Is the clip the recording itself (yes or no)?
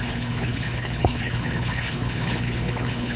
no